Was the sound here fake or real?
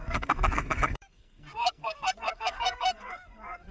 fake